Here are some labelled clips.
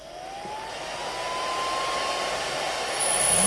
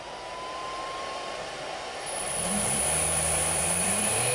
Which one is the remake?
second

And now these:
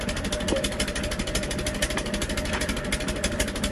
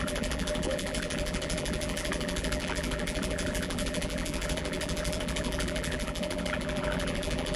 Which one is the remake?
second